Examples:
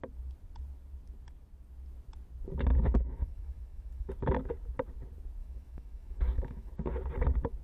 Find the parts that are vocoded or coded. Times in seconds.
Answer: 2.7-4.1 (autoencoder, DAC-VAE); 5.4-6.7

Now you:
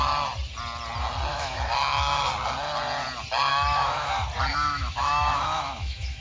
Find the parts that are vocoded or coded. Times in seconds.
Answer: 1.3-2.3 (autoencoder, DAC-VAE); 3.5-4.1; 4.5-6.2

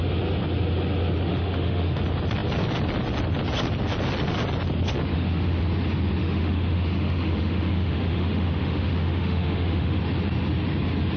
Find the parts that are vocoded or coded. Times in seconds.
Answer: 1.3-2.0 (autoencoder, DAC-VAE); 5.1-5.6; 6.2-10.0

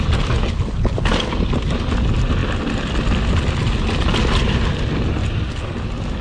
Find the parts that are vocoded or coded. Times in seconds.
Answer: none

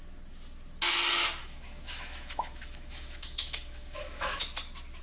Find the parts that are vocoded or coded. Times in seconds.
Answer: 1.4-4.4 (autoencoder, DAC-VAE)